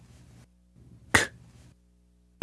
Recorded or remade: recorded